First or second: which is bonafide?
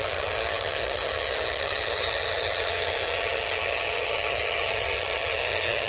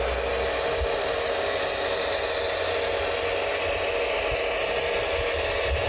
second